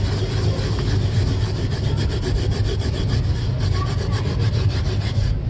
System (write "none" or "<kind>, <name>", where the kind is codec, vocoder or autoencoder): none